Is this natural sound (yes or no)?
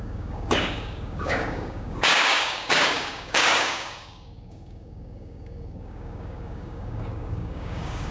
no